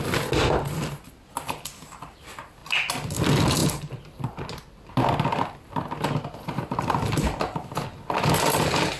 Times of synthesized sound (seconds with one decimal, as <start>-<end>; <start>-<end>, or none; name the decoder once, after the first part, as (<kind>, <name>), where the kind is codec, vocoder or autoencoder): 3.6-4.9 (vocoder, BigVGAN v2)